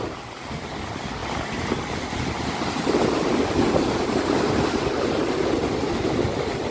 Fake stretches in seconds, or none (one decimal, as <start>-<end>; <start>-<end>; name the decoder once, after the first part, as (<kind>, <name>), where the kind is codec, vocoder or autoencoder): none